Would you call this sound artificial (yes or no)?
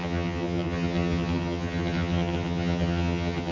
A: yes